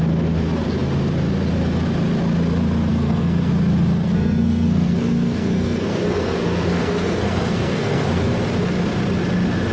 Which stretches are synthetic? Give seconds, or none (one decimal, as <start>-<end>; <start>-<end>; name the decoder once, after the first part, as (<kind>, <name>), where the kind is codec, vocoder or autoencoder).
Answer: 2.9-3.5 (codec, SNAC); 3.9-8.4